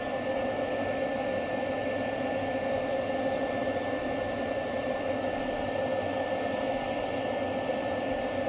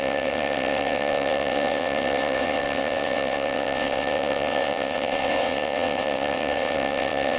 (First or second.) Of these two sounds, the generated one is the second